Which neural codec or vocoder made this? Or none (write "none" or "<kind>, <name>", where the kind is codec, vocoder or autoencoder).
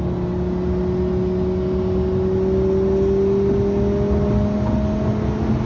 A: none